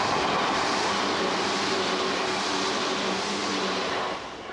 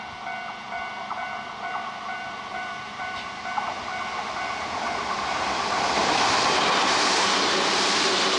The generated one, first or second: second